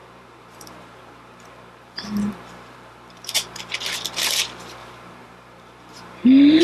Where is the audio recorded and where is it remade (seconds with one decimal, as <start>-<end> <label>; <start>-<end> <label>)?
0.0-3.7 remade; 3.7-4.8 recorded; 4.8-6.6 remade

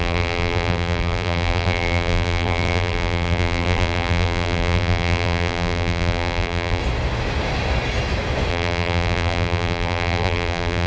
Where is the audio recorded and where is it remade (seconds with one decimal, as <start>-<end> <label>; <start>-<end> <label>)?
0.0-6.8 remade; 6.8-8.5 recorded; 8.5-10.9 remade

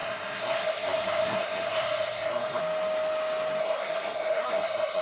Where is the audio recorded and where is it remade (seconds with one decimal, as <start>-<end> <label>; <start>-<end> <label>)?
0.0-2.6 remade; 2.6-3.6 recorded; 3.6-5.0 remade

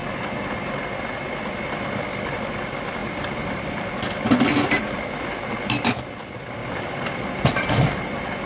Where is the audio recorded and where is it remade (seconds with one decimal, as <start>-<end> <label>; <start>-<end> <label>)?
0.0-3.0 recorded; 3.0-4.1 remade; 4.1-6.6 recorded; 6.6-8.5 remade

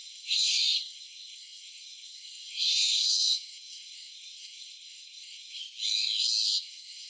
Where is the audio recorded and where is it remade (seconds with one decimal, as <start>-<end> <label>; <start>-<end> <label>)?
0.0-5.6 remade; 5.6-6.6 recorded; 6.6-7.1 remade

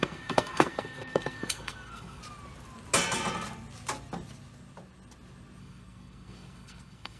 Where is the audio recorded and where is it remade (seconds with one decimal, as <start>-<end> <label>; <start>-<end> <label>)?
0.0-2.2 remade; 2.2-5.6 recorded; 5.6-7.2 remade

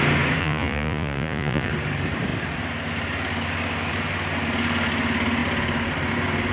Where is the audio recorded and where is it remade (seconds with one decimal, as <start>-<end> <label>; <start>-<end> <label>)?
0.0-0.4 recorded; 0.4-1.7 remade; 1.7-6.5 recorded